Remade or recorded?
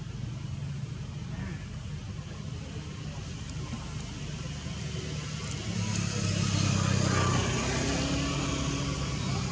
recorded